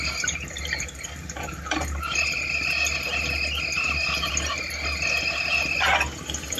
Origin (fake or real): real